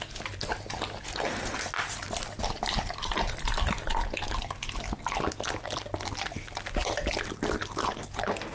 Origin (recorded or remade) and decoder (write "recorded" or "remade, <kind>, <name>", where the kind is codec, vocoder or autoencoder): recorded